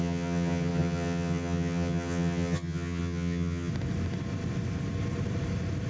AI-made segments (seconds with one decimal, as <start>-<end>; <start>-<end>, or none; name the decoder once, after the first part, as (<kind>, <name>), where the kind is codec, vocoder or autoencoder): 0.0-3.7 (vocoder, HiFi-GAN)